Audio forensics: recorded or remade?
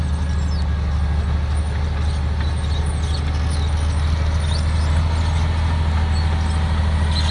recorded